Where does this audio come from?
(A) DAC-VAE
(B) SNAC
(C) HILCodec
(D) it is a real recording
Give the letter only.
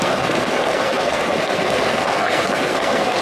B